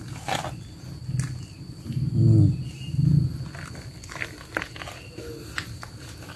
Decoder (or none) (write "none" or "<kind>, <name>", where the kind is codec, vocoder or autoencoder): none